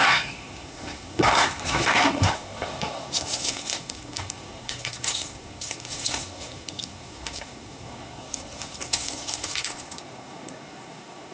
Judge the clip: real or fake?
fake